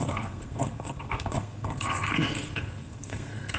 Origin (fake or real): fake